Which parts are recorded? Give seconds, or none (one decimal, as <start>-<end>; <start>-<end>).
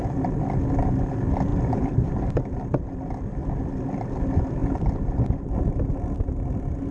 0.0-1.5; 2.9-6.9